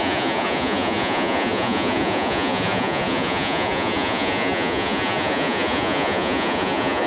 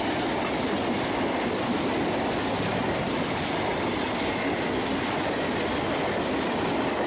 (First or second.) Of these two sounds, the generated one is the first